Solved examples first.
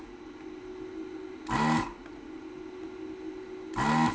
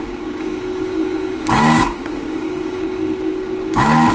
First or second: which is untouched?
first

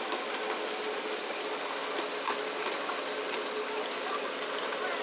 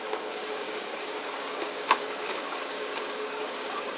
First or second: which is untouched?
first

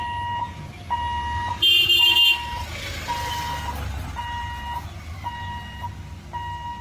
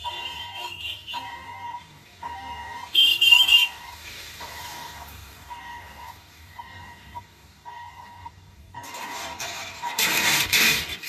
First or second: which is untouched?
first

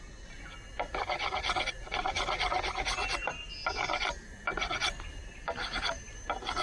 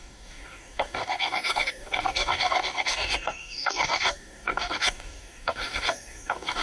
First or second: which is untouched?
first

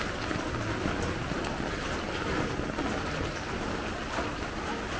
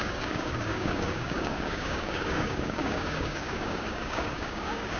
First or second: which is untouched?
first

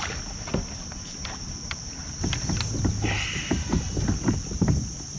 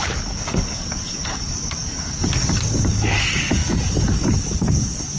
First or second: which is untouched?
first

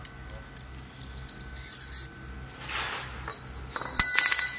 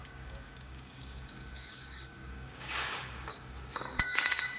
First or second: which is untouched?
first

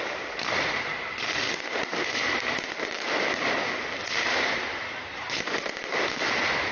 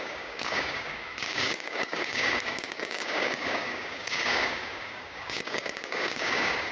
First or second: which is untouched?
first